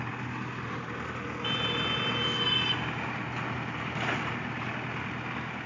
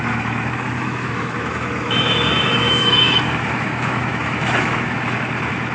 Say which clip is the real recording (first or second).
first